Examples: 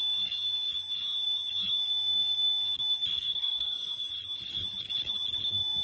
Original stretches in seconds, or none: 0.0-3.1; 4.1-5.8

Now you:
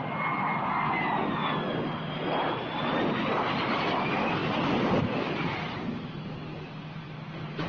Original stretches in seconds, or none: 0.0-7.7

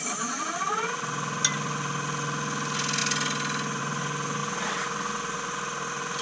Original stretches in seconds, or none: 0.0-6.2

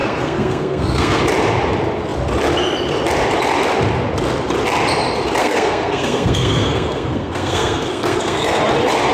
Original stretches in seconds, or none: 1.2-5.4; 8.6-9.1